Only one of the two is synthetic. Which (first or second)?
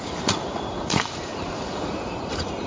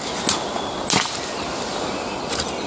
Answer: first